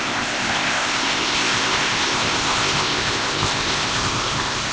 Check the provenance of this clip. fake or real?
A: fake